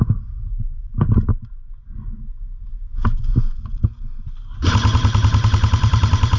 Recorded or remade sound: recorded